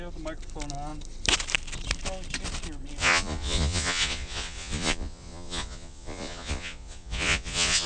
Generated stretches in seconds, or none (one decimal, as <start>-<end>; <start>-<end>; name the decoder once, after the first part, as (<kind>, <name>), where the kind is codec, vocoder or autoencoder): 3.0-7.9 (vocoder, Vocos)